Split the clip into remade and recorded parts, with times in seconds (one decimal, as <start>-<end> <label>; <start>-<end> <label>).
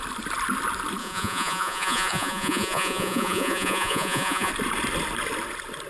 0.0-1.0 recorded; 1.0-4.5 remade; 4.5-5.9 recorded